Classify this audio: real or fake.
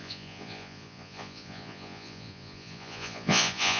fake